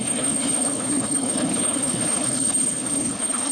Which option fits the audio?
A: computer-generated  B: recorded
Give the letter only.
A